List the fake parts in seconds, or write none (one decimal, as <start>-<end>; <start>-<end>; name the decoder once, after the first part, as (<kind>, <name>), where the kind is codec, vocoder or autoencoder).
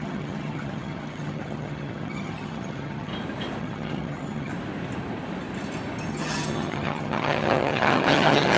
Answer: 0.0-3.1 (vocoder, HiFi-GAN); 3.6-4.5; 6.1-8.6